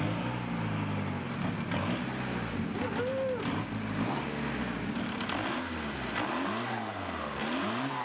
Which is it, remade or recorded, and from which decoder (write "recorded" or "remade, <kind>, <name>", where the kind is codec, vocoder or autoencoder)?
recorded